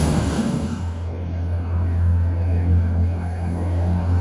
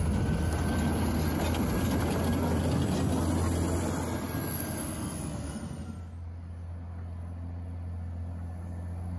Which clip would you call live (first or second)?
second